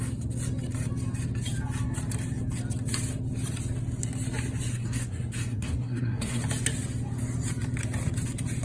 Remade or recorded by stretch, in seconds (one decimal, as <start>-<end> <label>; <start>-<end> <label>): 0.0-4.7 recorded; 4.7-6.4 remade; 6.4-8.6 recorded